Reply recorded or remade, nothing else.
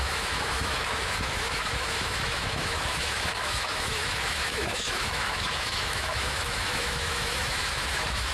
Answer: remade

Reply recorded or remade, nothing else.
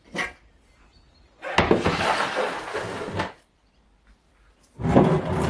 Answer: recorded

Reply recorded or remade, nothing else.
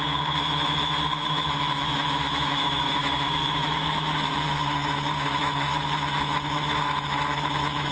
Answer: remade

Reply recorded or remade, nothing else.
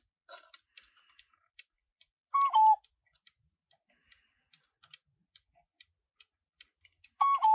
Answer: recorded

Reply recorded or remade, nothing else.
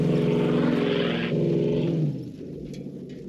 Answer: recorded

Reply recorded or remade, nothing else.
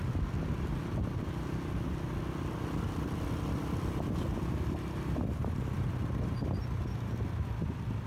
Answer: recorded